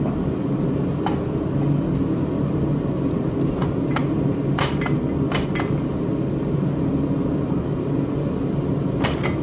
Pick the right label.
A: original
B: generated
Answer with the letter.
A